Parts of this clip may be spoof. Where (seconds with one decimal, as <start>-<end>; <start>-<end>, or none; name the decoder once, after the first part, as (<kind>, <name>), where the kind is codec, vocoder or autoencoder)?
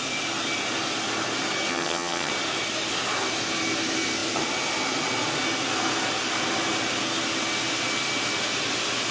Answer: 1.7-2.3 (vocoder, HiFi-GAN)